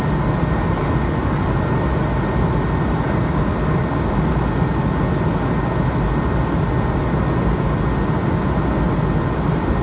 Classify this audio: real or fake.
real